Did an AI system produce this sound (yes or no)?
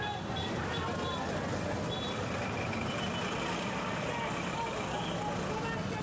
no